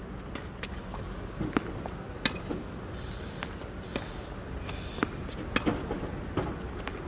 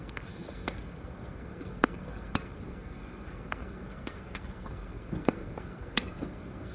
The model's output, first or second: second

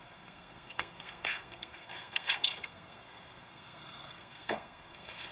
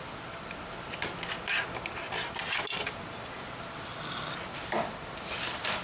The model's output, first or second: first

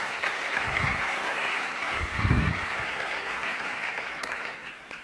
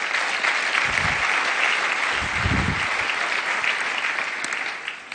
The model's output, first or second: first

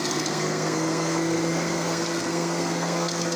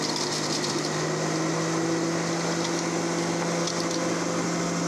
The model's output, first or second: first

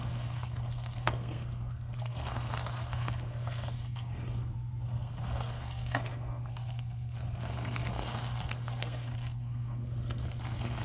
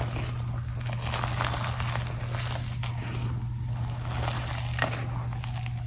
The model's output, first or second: first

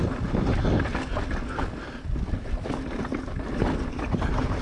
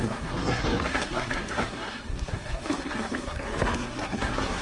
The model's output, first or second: second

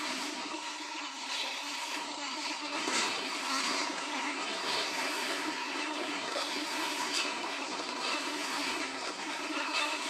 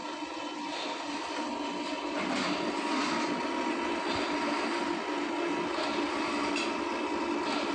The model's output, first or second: first